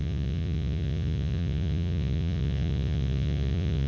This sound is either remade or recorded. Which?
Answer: remade